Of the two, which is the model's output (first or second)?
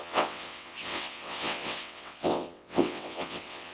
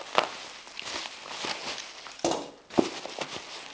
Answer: first